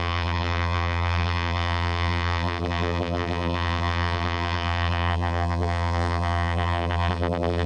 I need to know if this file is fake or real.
fake